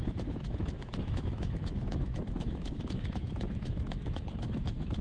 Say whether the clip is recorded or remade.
remade